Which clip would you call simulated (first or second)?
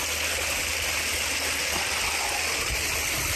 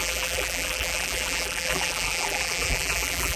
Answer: second